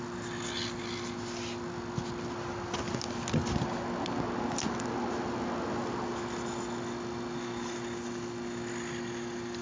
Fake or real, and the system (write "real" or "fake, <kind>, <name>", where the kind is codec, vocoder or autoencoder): real